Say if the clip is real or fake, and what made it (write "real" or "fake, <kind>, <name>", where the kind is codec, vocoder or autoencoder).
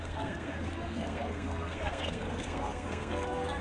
fake, codec, SNAC